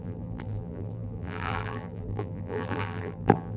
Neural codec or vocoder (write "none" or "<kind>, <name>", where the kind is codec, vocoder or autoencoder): vocoder, BigVGAN v2